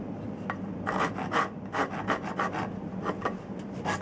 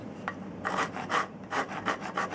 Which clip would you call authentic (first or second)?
first